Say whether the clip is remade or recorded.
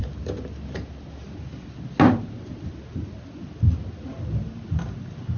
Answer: recorded